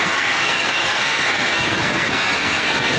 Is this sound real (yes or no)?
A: no